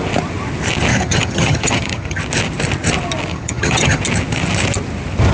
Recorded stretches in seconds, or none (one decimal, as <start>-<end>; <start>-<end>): 0.0-0.9; 2.2-3.3; 4.0-5.3